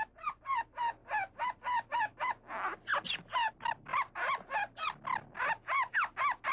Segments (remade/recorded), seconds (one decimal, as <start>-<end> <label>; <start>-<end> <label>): 0.0-6.5 recorded